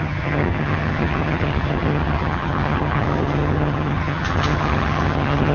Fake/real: fake